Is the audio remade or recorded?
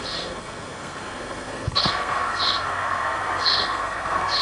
remade